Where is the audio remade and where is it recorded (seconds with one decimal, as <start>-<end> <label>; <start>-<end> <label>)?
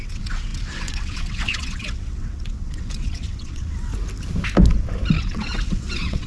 0.0-3.9 remade; 3.9-5.2 recorded; 5.2-6.3 remade